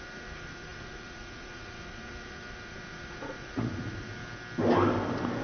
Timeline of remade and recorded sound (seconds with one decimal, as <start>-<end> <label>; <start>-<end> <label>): 0.0-4.2 remade; 4.2-5.4 recorded